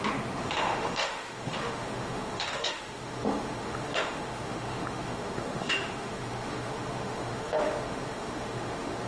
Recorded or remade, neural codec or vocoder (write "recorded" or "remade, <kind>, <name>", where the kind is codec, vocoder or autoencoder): remade, autoencoder, DAC-VAE